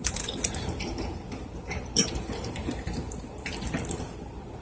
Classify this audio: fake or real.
fake